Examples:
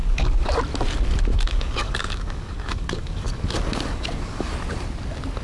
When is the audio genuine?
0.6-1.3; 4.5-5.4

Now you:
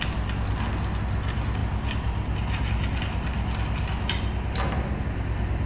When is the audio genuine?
0.0-5.7